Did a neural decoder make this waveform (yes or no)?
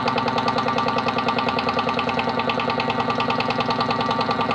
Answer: no